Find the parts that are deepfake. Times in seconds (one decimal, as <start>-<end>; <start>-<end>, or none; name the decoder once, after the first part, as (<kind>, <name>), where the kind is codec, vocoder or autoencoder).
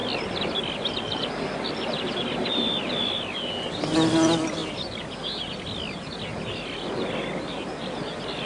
none